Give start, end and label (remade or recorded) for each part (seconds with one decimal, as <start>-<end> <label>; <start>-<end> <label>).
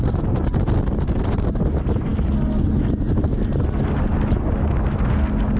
0.0-5.6 recorded